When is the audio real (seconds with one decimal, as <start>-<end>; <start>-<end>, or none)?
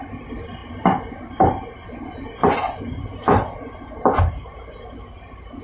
0.0-5.6